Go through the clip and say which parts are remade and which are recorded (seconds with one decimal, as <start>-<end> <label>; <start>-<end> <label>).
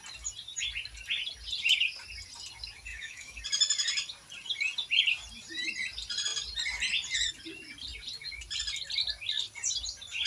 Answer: 0.0-2.9 recorded; 2.9-3.4 remade; 3.4-10.3 recorded